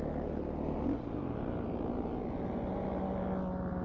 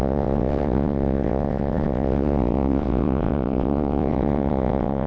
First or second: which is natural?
first